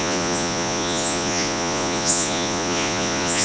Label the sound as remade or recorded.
remade